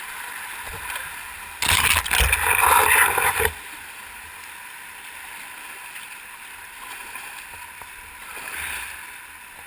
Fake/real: real